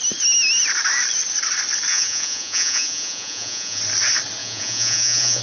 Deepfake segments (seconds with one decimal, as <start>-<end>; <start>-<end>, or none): 1.9-3.8; 4.4-5.4